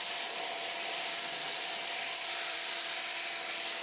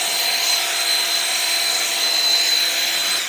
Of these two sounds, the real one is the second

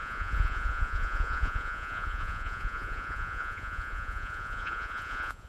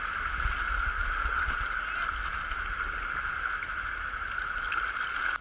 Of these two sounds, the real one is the second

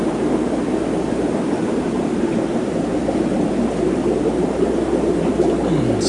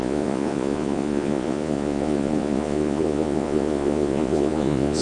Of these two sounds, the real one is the first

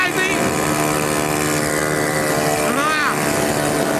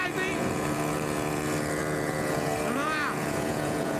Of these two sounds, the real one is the first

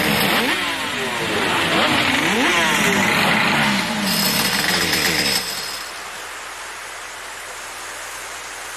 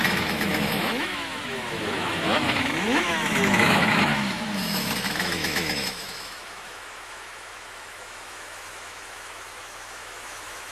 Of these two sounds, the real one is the first